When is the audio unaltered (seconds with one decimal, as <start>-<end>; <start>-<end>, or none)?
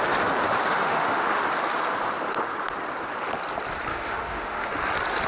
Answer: 0.0-0.7; 1.2-3.9; 4.7-5.3